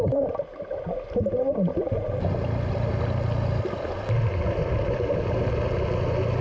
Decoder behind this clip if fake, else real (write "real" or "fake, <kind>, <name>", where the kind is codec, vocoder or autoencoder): real